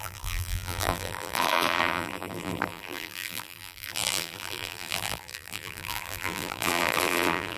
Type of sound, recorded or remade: remade